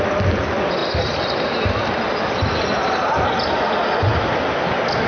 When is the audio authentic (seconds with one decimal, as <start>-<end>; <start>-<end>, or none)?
0.0-5.1